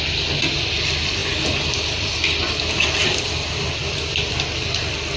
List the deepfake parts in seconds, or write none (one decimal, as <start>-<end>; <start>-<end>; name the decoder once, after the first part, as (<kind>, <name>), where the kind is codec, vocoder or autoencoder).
none